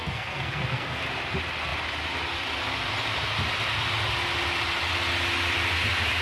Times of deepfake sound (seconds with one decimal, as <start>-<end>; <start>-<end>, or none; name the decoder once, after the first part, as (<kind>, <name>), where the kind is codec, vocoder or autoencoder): 0.0-1.0 (codec, SNAC)